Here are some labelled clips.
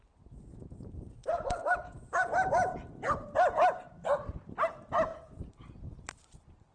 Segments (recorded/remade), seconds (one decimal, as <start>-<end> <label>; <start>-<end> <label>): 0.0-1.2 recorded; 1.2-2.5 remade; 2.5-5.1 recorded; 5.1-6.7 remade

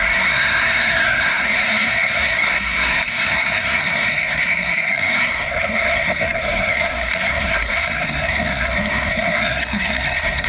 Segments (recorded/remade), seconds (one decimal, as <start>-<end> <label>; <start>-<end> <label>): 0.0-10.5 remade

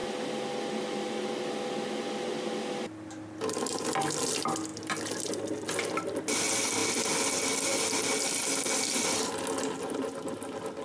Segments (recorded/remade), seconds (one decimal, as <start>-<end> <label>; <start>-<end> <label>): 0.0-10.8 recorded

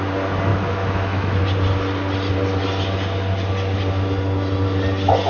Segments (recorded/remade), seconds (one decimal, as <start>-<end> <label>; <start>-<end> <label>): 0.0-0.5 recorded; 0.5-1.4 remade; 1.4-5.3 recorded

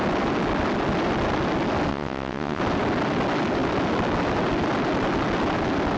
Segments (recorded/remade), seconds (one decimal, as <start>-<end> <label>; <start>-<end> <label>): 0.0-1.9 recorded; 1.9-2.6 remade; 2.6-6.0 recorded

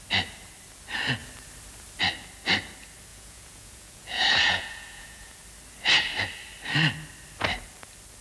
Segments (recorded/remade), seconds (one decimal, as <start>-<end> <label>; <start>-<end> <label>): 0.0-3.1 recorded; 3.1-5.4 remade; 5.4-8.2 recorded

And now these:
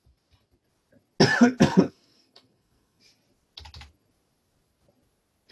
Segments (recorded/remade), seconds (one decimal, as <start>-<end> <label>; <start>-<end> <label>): 0.0-1.4 recorded; 1.4-3.0 remade; 3.0-5.5 recorded

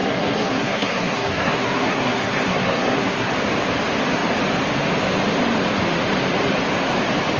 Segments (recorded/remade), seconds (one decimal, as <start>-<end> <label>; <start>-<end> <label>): 0.0-3.3 remade; 3.3-7.4 recorded